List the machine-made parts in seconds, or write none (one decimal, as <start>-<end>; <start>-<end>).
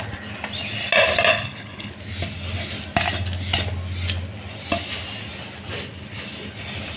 1.3-1.9